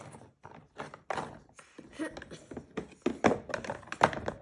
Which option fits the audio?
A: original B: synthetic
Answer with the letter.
A